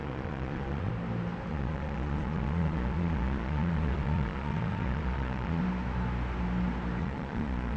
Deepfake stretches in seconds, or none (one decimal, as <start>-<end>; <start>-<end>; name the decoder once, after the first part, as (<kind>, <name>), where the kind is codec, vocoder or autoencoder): 0.0-0.9 (vocoder, Vocos); 1.5-5.6; 7.0-7.8